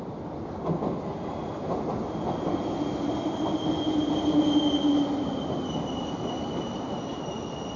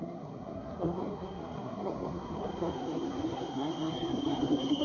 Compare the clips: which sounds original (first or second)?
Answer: first